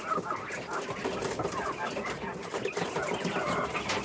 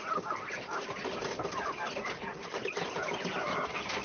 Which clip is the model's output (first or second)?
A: second